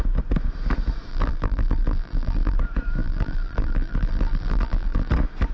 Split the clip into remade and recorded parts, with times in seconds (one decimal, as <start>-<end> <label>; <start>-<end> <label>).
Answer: 0.0-1.1 recorded; 1.1-2.6 remade; 2.6-3.0 recorded; 3.0-5.1 remade; 5.1-5.5 recorded